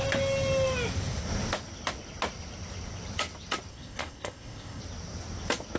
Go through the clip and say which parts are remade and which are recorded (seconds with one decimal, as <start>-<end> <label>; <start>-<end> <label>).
0.0-3.7 recorded; 3.7-4.8 remade; 4.8-5.8 recorded